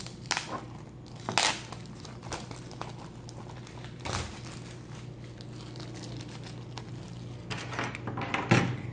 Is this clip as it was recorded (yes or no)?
yes